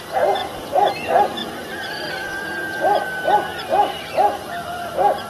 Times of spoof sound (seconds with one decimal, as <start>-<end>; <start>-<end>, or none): 0.4-0.9; 1.4-2.4; 3.5-4.5